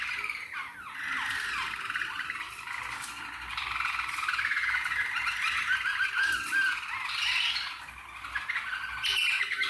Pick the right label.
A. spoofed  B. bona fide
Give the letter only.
B